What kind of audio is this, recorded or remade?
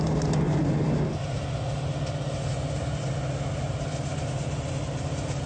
recorded